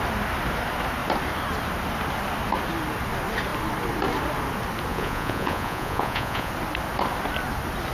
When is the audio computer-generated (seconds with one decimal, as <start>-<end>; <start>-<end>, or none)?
4.9-6.5